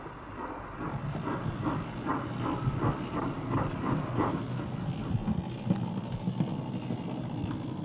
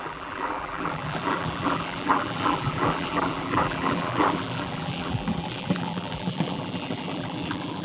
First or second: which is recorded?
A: first